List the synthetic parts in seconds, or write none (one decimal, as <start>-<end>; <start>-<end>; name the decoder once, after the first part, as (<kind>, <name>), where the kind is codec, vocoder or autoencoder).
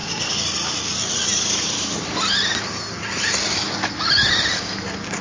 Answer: none